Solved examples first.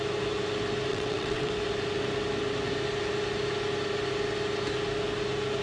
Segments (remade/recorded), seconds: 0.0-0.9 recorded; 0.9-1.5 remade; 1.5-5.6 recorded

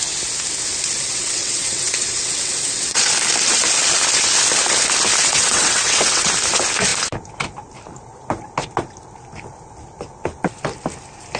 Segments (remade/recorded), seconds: 0.0-1.1 recorded; 1.1-3.1 remade; 3.1-5.3 recorded; 5.3-6.3 remade; 6.3-11.4 recorded